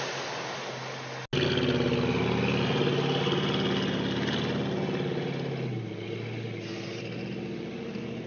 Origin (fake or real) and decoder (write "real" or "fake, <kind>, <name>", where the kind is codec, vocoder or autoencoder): real